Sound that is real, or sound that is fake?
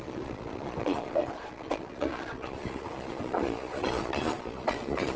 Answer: fake